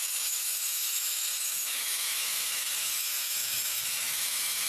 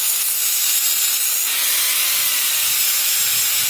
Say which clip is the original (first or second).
second